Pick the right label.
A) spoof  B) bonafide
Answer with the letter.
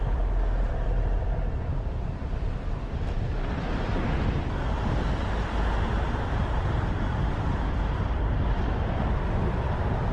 A